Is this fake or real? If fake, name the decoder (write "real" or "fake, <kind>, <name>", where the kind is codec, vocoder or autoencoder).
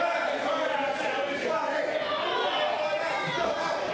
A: real